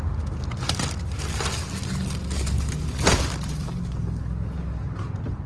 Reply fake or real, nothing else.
real